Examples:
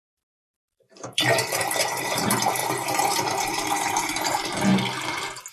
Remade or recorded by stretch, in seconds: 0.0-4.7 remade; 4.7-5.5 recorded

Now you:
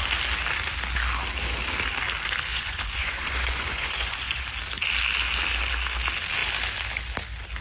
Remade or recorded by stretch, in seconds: 0.0-2.5 recorded; 2.5-4.4 remade; 4.4-7.6 recorded